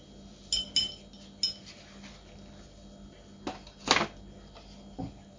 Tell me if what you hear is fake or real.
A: real